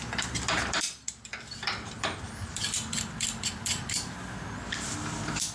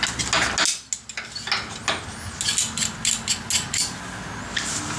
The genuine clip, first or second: second